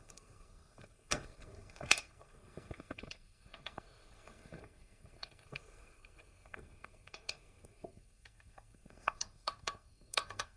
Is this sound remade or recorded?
remade